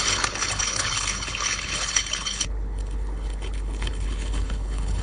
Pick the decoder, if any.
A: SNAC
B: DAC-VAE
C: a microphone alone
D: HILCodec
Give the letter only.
D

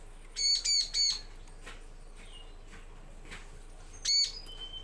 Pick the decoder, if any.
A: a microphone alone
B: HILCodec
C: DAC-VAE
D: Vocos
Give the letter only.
A